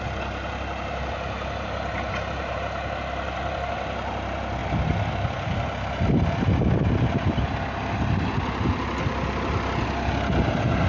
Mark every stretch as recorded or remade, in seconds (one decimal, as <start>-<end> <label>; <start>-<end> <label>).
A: 0.0-10.9 recorded